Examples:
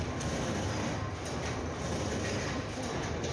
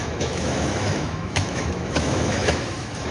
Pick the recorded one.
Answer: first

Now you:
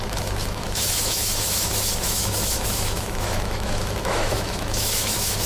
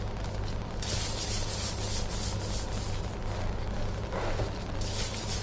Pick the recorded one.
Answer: second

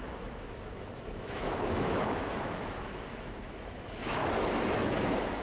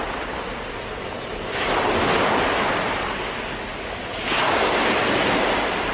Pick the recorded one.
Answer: second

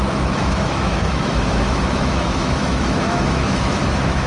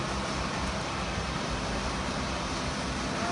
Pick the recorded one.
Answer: second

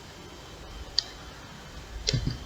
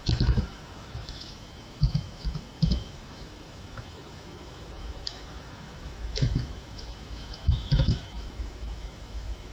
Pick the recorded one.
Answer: first